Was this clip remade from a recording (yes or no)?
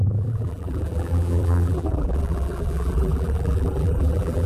yes